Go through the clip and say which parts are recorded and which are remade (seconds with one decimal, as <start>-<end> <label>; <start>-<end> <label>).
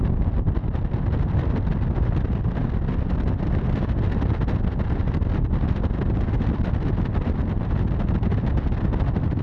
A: 0.0-9.4 recorded